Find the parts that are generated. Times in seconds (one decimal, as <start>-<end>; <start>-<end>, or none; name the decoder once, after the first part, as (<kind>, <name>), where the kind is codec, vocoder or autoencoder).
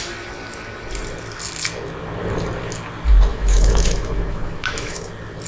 3.3-5.1 (autoencoder, DAC-VAE)